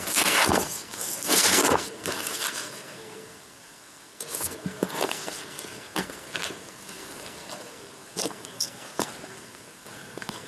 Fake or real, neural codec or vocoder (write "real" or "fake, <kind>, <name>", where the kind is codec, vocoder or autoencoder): fake, codec, SNAC